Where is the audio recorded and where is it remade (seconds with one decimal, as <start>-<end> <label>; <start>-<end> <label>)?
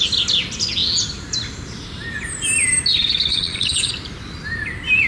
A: 0.0-3.3 recorded; 3.3-3.9 remade; 3.9-5.1 recorded